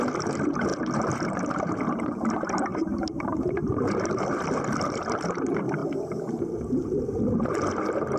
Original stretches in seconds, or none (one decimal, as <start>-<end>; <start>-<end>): 0.0-2.7; 4.5-8.2